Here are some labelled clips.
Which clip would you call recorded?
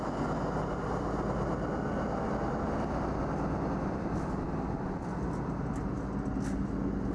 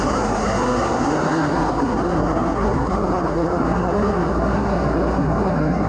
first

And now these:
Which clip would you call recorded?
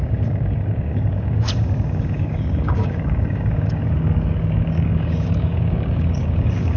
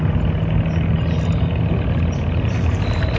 second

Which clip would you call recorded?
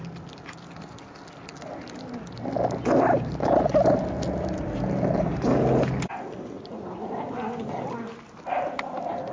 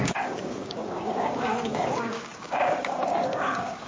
first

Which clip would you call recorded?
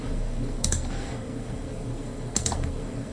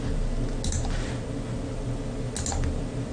second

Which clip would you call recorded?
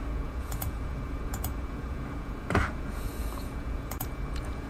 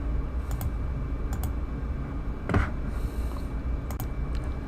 second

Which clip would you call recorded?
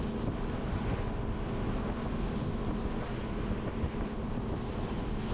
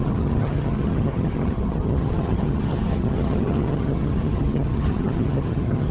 first